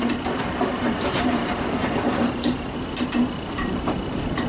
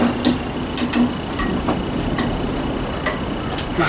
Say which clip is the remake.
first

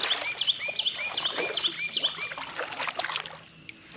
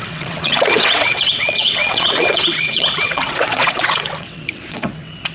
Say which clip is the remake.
second